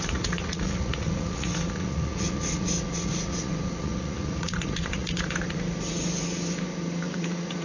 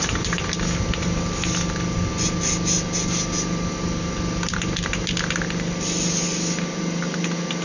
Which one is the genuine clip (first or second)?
second